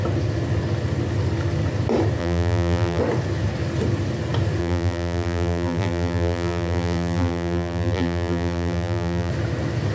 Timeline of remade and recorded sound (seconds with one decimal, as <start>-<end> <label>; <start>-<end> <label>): 0.0-2.2 recorded; 2.2-3.0 remade; 3.0-4.6 recorded; 4.6-9.3 remade; 9.3-9.9 recorded